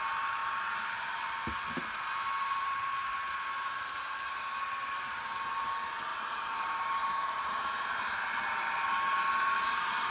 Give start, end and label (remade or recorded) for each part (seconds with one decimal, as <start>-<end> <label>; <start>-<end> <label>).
0.0-6.1 recorded; 6.1-8.9 remade; 8.9-10.1 recorded